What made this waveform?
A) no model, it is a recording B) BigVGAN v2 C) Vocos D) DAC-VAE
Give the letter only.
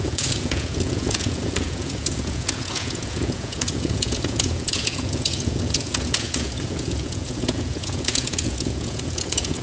C